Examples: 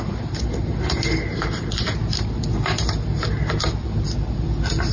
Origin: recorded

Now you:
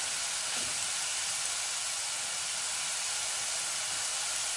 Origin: recorded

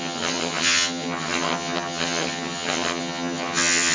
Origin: remade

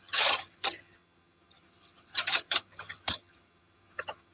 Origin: remade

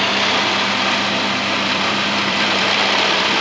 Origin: remade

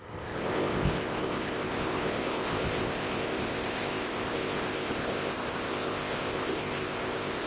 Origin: remade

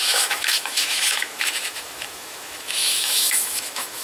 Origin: remade